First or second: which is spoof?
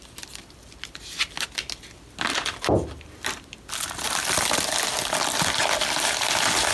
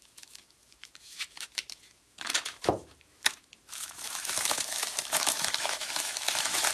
second